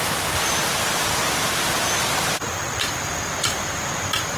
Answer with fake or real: real